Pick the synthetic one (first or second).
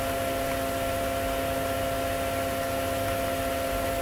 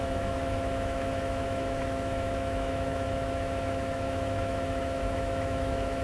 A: second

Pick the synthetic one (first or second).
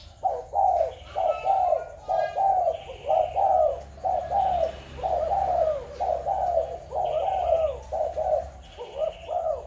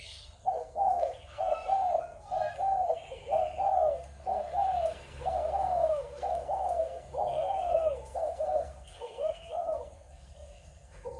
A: second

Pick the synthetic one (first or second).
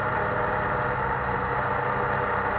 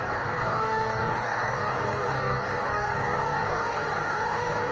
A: second